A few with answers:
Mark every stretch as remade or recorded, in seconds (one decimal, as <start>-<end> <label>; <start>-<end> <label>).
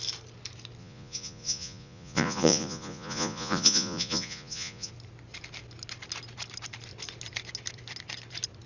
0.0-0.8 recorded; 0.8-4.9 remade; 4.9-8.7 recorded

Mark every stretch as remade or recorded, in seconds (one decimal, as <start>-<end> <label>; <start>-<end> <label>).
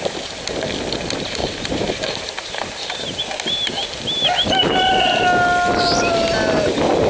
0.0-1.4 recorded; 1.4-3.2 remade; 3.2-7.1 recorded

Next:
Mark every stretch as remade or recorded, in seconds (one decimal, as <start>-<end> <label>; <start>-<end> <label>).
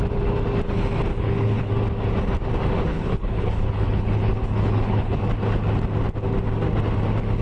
0.0-1.1 recorded; 1.1-1.7 remade; 1.7-2.9 recorded; 2.9-5.2 remade; 5.2-7.4 recorded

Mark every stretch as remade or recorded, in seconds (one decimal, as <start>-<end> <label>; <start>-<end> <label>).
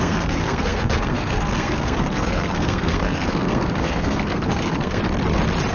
0.0-5.0 remade; 5.0-5.7 recorded